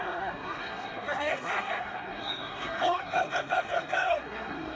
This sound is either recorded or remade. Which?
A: remade